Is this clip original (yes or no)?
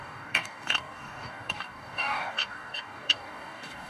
no